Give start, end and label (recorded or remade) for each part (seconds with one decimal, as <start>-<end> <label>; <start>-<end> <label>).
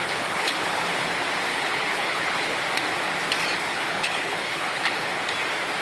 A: 0.0-1.1 remade; 1.1-1.5 recorded; 1.5-2.6 remade; 2.6-3.7 recorded; 3.7-5.1 remade; 5.1-5.8 recorded